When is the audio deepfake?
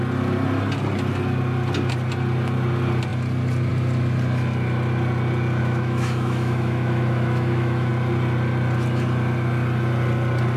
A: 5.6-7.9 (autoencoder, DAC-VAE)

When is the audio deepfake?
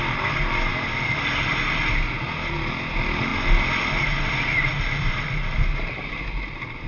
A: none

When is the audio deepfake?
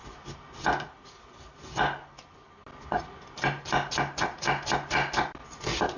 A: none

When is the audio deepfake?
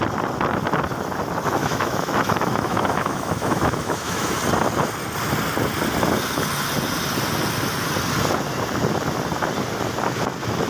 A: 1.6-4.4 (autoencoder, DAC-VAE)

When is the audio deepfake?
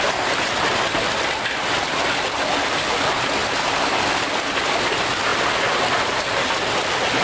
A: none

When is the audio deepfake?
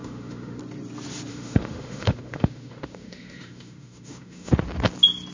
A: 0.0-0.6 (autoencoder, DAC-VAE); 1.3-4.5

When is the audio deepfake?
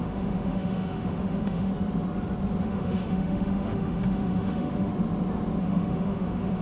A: 0.0-1.7 (autoencoder, DAC-VAE); 2.6-4.9; 5.6-6.6